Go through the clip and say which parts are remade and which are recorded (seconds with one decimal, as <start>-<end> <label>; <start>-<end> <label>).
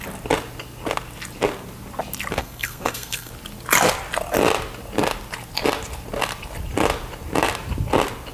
0.0-2.4 recorded; 2.4-3.3 remade; 3.3-8.3 recorded